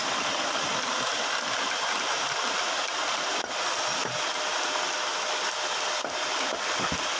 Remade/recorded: recorded